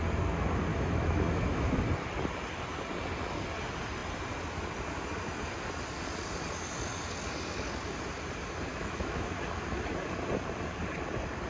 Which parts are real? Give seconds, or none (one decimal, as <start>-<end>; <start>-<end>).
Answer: 0.0-0.7; 1.8-8.7; 9.3-11.5